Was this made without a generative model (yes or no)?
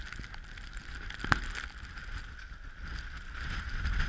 yes